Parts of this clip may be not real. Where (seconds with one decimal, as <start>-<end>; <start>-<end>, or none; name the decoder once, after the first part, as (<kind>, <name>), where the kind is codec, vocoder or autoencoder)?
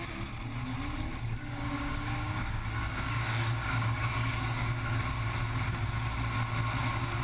1.1-4.7 (codec, DAC)